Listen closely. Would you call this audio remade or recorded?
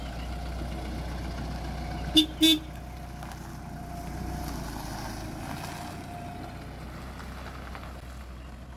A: recorded